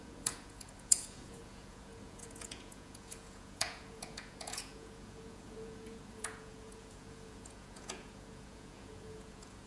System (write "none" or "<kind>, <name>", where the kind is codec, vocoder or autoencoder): vocoder, Vocos